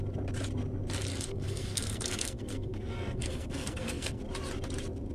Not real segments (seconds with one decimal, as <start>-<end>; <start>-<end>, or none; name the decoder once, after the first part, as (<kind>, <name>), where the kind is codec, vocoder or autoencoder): 1.1-4.2 (codec, SNAC)